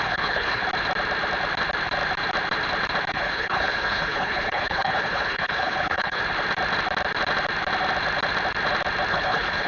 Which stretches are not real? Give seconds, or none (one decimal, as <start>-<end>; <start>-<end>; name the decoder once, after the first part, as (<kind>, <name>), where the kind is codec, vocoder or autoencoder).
0.0-0.6 (codec, HILCodec); 3.1-6.2; 9.1-9.7